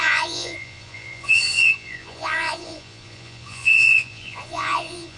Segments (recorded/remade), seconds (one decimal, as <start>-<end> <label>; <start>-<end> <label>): 0.0-5.2 remade